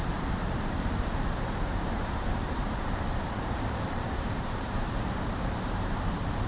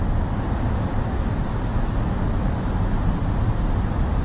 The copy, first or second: first